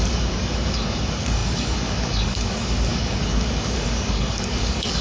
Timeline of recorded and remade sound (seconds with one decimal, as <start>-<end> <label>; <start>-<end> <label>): 0.0-5.0 remade